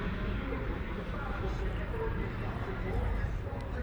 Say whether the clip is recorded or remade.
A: remade